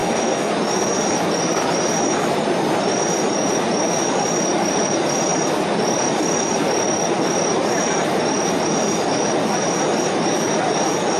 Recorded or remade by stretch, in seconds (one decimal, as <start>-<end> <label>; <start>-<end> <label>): 0.0-0.5 remade; 0.5-11.2 recorded